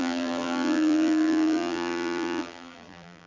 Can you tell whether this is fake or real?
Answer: fake